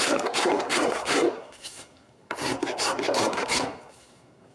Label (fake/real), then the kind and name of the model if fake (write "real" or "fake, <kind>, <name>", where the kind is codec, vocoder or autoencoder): fake, codec, SNAC